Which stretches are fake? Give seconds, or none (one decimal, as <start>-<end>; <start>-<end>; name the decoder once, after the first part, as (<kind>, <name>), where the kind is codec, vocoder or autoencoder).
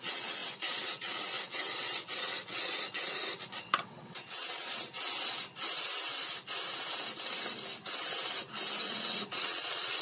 0.0-4.7 (vocoder, WaveNeXt); 8.8-10.0